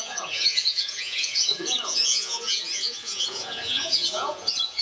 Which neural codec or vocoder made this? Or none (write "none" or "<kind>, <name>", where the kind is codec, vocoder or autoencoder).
vocoder, Vocos